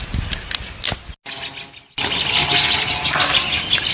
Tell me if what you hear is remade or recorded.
recorded